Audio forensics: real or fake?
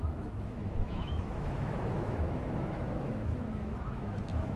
fake